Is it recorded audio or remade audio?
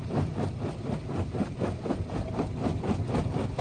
recorded